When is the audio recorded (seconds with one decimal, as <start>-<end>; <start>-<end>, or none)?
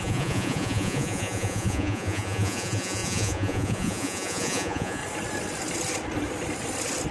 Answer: 5.0-7.1